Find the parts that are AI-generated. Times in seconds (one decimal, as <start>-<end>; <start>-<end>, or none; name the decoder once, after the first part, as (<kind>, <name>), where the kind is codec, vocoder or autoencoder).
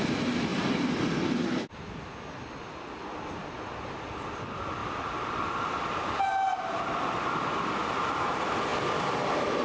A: 0.5-1.0 (vocoder, BigVGAN v2); 4.8-6.2; 8.7-9.6